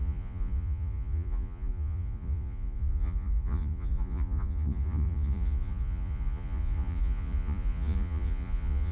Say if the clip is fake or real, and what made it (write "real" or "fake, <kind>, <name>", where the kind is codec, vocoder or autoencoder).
fake, vocoder, Vocos